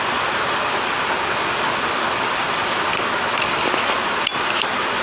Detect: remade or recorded recorded